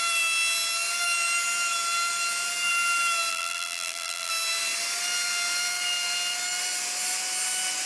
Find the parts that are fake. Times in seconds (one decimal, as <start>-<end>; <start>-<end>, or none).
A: 3.3-4.3